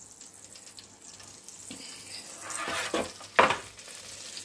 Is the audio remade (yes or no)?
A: no